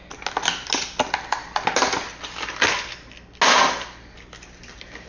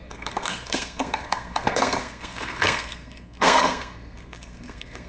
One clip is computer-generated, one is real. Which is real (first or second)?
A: first